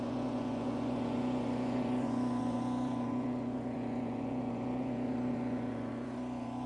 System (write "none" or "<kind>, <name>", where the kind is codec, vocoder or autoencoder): vocoder, Vocos